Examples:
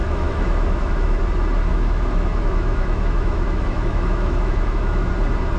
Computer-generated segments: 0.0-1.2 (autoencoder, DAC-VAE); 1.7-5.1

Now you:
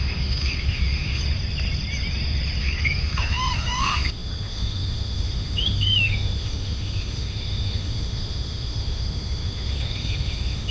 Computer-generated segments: 0.0-1.2 (autoencoder, DAC-VAE); 2.6-10.7

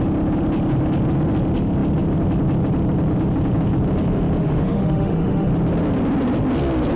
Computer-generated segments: 4.4-5.5 (autoencoder, DAC-VAE)